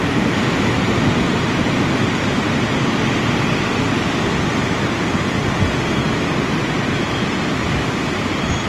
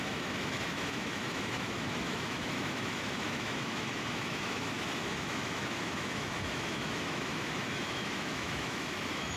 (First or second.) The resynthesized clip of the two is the second